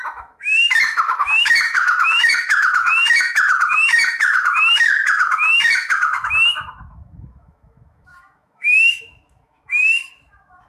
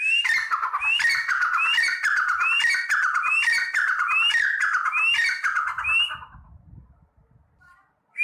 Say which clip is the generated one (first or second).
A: first